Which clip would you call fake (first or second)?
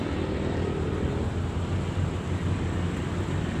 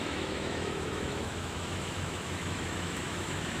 second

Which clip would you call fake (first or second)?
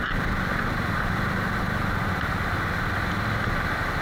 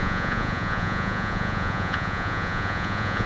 second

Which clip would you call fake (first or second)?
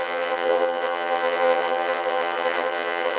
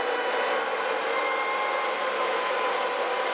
first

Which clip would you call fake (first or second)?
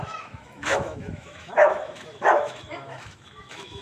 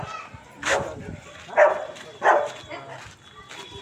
first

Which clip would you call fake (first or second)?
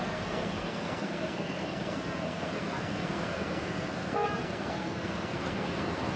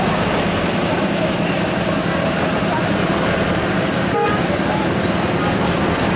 first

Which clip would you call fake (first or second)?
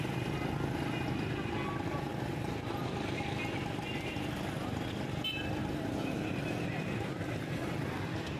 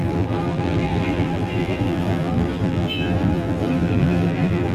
second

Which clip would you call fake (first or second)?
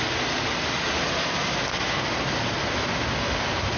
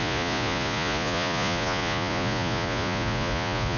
second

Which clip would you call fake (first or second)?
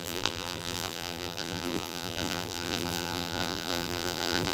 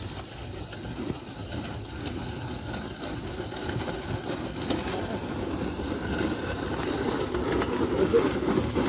first